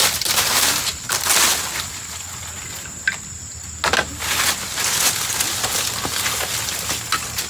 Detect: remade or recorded recorded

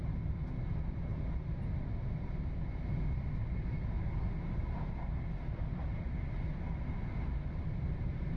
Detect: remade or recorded recorded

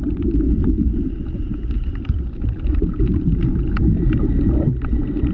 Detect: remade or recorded remade